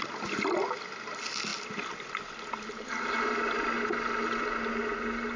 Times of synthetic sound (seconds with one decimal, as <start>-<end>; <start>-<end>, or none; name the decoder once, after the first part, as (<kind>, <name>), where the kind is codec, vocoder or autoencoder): none